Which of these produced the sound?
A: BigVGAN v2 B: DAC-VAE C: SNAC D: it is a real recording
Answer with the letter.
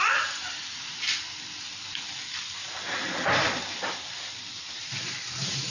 A